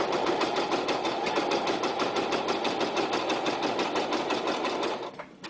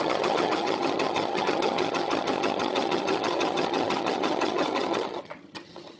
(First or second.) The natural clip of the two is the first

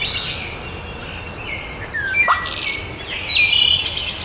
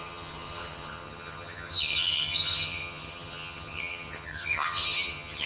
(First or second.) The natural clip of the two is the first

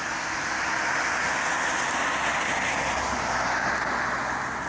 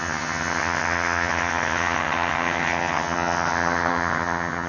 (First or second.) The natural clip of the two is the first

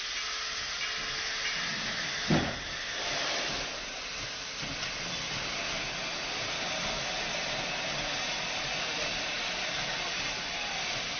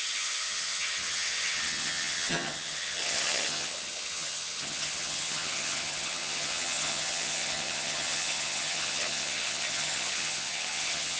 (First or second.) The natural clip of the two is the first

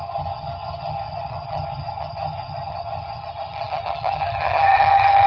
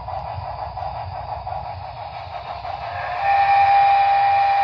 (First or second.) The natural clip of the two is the second